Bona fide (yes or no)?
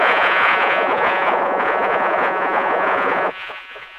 no